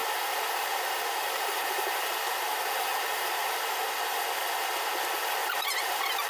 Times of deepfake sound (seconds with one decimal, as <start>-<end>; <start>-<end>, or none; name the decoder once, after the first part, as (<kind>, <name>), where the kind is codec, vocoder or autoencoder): 0.0-3.8 (vocoder, BigVGAN v2); 5.4-6.3